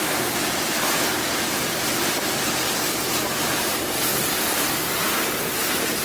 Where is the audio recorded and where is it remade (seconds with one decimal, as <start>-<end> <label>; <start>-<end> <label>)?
0.0-6.0 recorded